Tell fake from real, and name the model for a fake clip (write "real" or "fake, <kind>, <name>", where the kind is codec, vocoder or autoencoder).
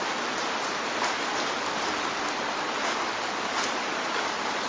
real